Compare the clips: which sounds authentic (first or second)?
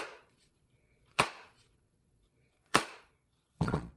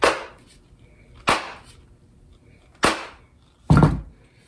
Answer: second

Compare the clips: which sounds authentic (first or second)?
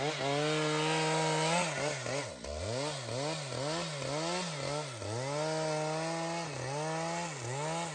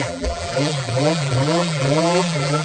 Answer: first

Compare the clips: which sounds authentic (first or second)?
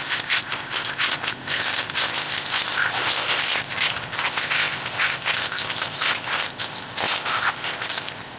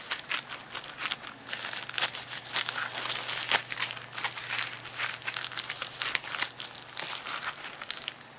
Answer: second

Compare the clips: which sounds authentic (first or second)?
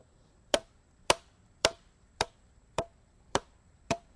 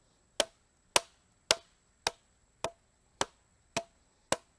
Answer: second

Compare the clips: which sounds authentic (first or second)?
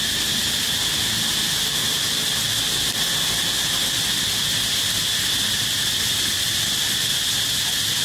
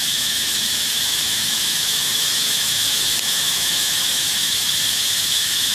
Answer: first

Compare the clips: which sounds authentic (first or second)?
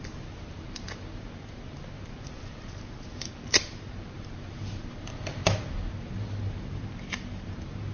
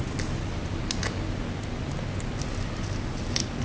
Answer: second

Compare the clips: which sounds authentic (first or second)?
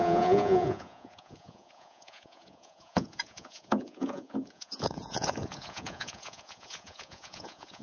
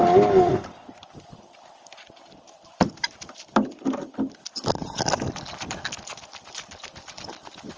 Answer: second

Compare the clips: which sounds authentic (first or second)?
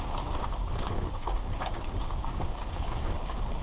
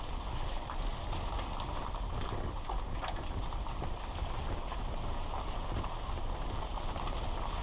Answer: second